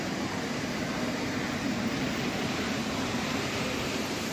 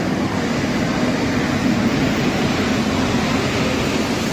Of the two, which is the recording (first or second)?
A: second